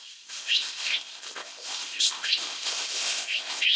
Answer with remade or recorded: remade